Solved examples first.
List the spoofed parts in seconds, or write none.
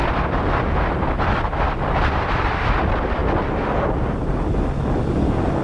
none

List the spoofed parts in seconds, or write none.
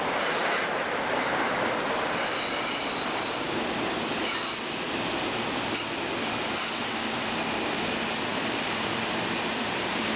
0.4-4.6 (vocoder, BigVGAN v2); 8.3-10.2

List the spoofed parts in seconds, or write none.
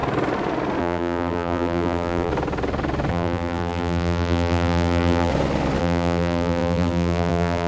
0.8-2.3 (vocoder, BigVGAN v2); 3.1-5.3; 5.8-7.7